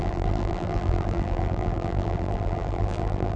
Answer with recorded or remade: remade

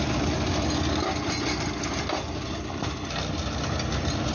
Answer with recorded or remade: recorded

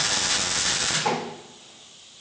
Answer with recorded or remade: recorded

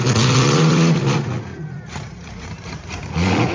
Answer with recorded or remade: remade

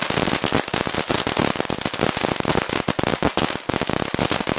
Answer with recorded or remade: recorded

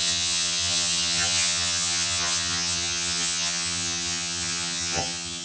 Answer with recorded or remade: remade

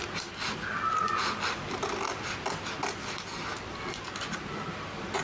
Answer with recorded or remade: recorded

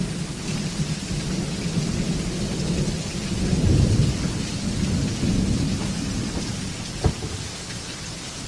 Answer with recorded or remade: recorded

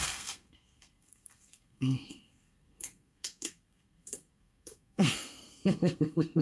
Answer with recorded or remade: remade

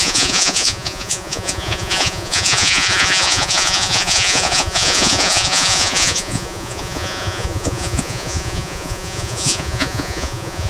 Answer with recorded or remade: remade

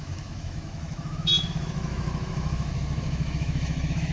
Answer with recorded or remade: remade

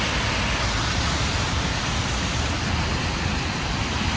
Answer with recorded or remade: recorded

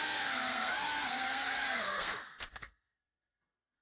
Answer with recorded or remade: remade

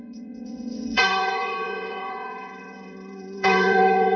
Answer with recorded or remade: remade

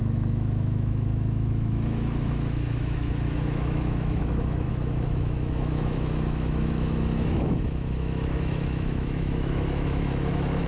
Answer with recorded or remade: remade